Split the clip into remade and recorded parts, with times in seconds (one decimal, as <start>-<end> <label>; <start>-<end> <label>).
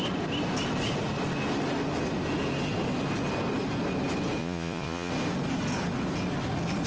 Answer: 0.0-4.4 recorded; 4.4-5.1 remade; 5.1-6.9 recorded